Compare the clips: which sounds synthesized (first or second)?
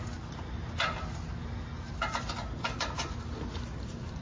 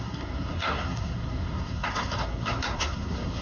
second